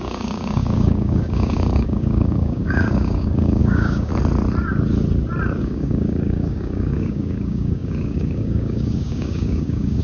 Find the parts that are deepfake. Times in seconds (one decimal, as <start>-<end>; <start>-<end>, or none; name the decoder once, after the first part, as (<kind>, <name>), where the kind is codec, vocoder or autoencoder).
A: 0.0-4.1 (codec, DAC); 5.6-10.0